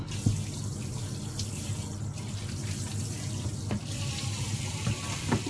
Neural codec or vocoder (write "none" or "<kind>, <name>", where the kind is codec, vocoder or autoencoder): none